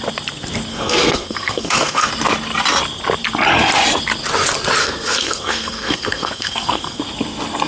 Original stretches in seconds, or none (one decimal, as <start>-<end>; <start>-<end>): 0.0-0.7; 2.1-4.8; 7.0-7.7